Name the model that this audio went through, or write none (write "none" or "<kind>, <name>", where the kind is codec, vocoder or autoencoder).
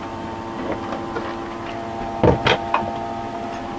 none